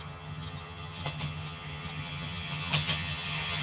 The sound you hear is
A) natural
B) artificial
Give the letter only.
B